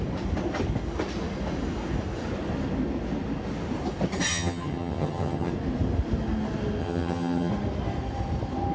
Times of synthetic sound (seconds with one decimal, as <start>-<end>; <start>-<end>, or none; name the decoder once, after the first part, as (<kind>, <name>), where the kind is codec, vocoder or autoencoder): 4.3-5.5 (vocoder, HiFi-GAN); 6.8-7.5